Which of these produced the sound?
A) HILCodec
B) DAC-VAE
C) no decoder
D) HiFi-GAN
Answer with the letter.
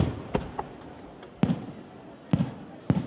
C